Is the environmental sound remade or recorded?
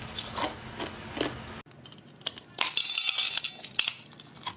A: recorded